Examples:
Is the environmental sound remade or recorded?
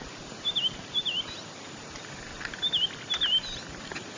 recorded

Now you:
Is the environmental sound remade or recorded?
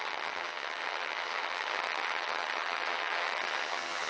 remade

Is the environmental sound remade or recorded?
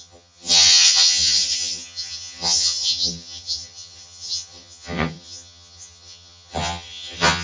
remade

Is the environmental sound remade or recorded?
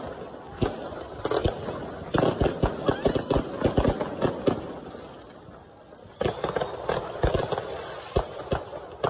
recorded